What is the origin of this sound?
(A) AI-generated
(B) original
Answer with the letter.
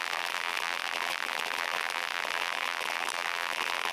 A